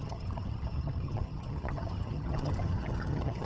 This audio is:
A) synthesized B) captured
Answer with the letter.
A